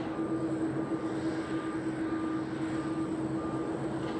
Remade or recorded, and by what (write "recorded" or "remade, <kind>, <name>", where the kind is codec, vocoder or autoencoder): recorded